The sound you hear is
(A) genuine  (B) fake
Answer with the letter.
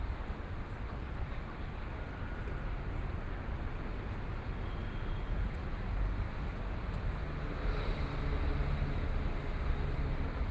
A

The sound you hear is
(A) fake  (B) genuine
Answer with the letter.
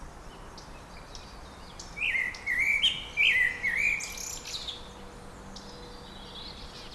B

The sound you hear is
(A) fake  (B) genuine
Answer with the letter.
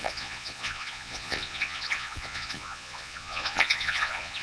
A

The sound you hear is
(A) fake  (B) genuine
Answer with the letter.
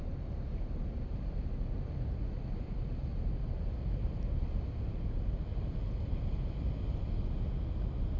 B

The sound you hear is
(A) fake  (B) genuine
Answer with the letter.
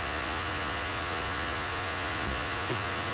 A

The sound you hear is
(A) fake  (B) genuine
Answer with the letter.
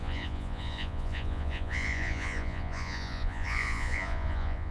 A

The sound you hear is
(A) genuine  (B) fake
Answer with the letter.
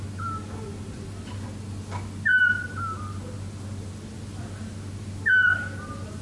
A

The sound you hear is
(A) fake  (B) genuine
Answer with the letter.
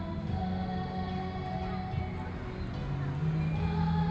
B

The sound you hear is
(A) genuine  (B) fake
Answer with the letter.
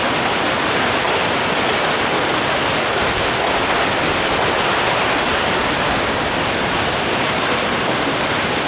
A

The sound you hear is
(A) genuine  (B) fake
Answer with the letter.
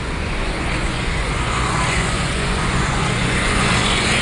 B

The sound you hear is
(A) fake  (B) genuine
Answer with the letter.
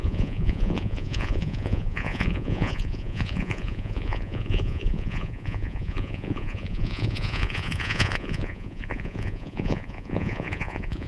A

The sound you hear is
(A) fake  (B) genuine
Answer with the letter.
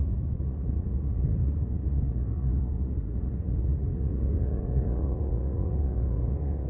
A